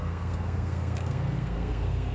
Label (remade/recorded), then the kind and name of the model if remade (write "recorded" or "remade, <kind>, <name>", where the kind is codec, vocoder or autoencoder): remade, codec, SNAC